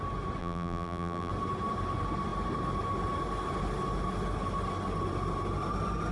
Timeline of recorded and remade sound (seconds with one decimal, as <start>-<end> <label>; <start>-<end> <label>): 0.0-0.4 recorded; 0.4-1.3 remade; 1.3-6.1 recorded